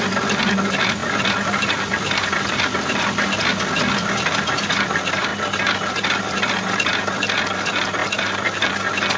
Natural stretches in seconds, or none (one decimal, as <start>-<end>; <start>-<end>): none